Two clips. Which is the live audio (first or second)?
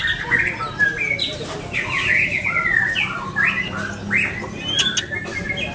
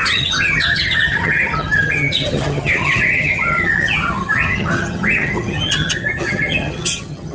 first